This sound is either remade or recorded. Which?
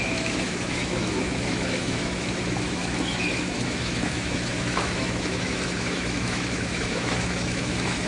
remade